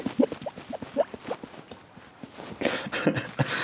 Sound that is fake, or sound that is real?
real